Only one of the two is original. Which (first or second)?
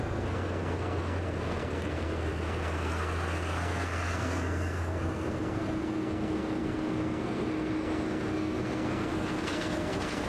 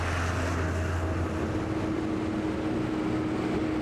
second